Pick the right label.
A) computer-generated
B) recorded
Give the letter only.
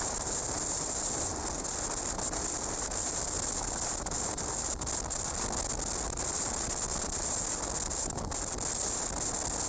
B